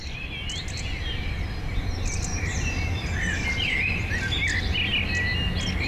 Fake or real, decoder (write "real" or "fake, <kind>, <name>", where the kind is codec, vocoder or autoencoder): real